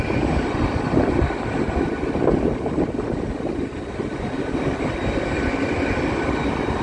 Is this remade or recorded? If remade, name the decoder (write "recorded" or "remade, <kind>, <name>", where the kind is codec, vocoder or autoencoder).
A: recorded